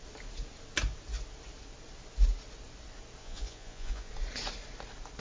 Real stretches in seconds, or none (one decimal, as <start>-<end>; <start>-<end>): 0.0-3.2; 4.1-5.2

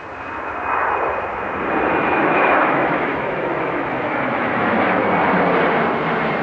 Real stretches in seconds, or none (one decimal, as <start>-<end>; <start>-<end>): 0.0-2.0; 5.0-6.4

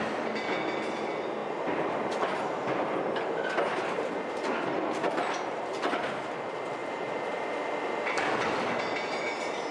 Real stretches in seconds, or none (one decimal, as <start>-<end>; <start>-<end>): 0.0-9.7

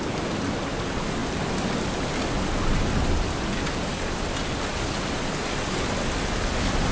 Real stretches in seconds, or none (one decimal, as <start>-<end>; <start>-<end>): 0.0-6.9

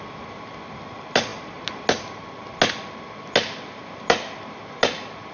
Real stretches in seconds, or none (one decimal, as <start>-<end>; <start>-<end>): 0.0-5.3

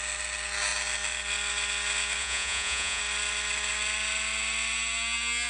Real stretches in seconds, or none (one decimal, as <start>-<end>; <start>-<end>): 0.0-2.2; 3.0-5.5

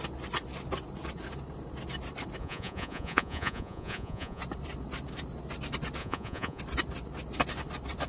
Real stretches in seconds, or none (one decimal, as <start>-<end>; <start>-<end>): 0.0-2.4; 4.4-6.0; 6.6-8.1